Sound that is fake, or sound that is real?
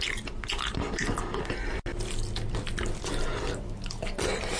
real